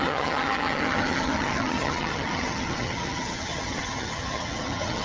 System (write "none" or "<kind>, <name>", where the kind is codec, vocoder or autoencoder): vocoder, HiFi-GAN